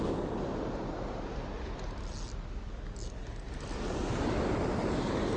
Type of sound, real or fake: real